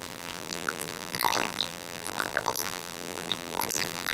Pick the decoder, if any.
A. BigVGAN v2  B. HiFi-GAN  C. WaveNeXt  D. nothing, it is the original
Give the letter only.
A